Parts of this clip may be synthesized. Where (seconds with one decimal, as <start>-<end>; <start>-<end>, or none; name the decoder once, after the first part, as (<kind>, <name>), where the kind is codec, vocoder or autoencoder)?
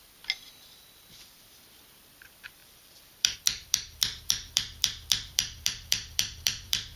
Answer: 2.6-7.0 (vocoder, BigVGAN v2)